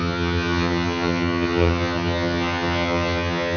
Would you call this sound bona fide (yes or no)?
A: no